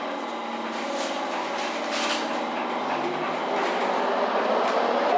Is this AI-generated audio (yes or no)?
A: no